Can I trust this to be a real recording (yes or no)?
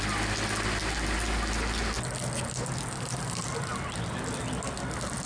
yes